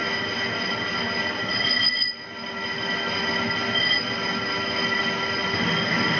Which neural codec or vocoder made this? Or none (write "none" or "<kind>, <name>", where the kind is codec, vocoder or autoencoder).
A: none